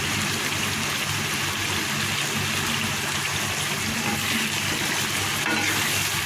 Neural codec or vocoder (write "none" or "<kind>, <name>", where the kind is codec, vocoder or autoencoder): none